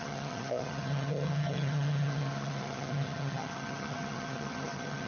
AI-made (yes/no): yes